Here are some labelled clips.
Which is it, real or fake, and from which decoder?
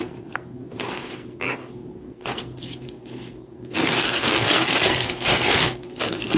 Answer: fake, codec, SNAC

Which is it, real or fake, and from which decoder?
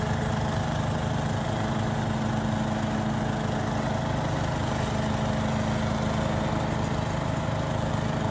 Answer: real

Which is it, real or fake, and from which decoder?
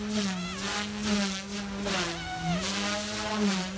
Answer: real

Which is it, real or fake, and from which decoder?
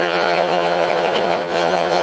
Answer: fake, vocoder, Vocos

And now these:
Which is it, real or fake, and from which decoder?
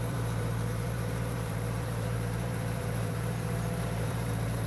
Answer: fake, vocoder, BigVGAN v2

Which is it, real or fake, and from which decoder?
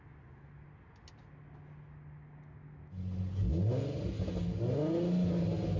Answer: real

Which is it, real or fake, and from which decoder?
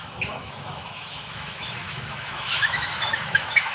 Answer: fake, autoencoder, DAC-VAE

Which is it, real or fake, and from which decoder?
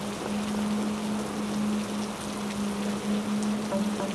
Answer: real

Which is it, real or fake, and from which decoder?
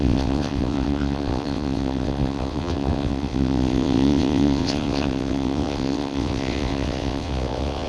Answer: fake, vocoder, WaveNeXt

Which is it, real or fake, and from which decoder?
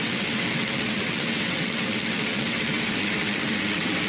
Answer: fake, vocoder, WaveNeXt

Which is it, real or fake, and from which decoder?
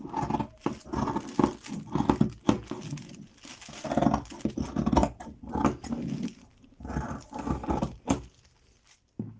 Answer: real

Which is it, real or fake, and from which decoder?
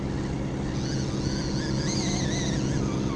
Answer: real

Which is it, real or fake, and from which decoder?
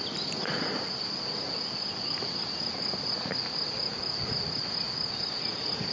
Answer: real